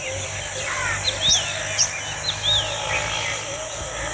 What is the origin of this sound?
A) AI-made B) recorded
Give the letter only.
B